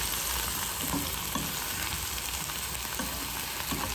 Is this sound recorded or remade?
recorded